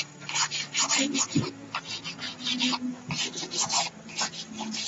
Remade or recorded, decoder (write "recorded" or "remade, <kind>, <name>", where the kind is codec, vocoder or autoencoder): recorded